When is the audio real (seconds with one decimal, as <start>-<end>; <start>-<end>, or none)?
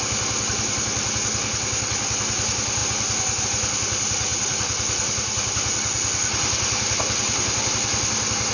0.0-4.3; 7.7-8.5